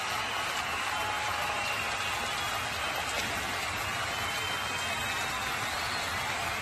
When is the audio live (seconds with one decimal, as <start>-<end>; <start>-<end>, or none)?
0.0-1.2; 2.0-6.6